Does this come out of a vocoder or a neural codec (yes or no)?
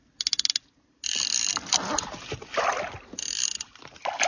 no